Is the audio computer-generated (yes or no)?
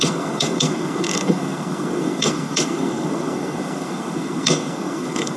yes